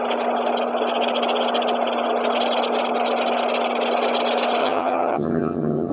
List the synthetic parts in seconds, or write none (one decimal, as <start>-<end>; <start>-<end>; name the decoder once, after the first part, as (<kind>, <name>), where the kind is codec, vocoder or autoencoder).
4.6-5.9 (vocoder, HiFi-GAN)